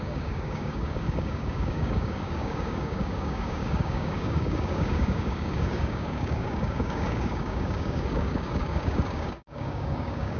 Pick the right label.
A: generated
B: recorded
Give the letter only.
A